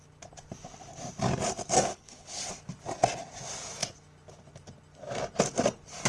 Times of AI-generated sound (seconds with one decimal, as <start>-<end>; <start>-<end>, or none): 1.9-2.4